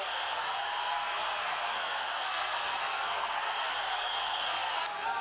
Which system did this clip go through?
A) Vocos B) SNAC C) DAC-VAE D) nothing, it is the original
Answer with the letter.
B